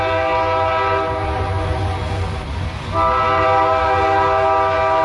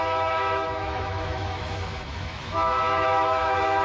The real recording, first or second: first